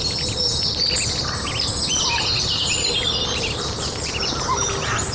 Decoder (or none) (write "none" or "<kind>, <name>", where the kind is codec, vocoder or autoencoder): none